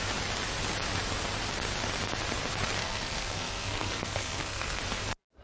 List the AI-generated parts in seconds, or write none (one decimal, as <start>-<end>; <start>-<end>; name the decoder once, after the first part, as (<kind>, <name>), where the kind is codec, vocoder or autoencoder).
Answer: 2.8-4.8 (codec, SNAC)